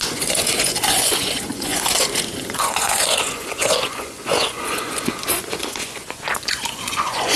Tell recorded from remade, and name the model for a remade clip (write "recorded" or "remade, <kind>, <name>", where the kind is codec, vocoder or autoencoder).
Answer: remade, vocoder, Vocos